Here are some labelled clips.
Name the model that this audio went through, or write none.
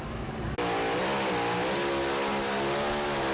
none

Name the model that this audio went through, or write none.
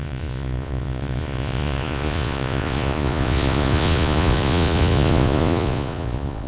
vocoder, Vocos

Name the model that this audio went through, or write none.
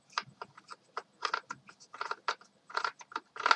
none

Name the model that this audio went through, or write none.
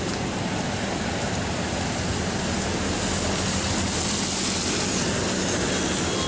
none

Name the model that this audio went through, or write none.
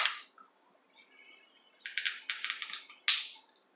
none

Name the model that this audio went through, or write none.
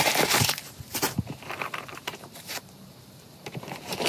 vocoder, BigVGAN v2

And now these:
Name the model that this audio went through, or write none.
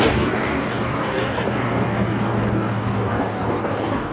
codec, DAC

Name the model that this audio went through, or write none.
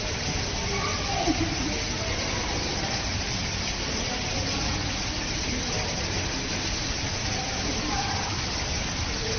none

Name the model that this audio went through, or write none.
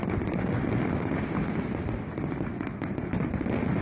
none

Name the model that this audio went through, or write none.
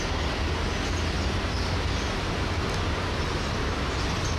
none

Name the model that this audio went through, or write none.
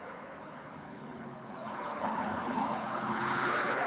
codec, HILCodec